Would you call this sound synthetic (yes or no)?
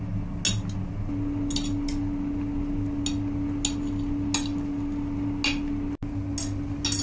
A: no